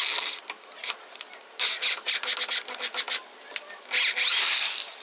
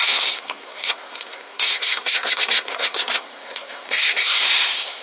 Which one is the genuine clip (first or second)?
first